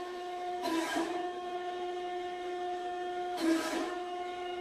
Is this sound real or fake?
fake